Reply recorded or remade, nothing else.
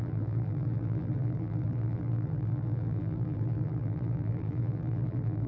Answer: remade